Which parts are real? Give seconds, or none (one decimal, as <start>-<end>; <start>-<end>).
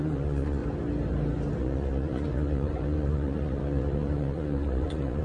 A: 0.6-1.6